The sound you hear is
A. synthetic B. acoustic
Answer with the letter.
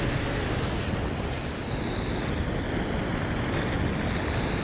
B